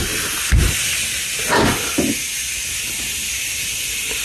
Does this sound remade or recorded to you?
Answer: recorded